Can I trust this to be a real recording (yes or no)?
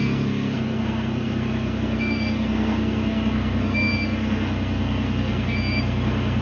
no